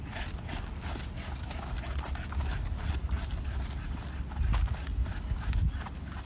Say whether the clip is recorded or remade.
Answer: recorded